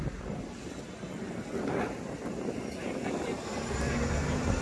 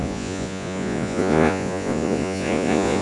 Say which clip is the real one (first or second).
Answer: first